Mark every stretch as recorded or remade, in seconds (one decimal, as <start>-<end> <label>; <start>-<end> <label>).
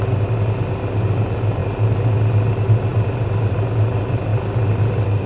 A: 0.0-5.3 recorded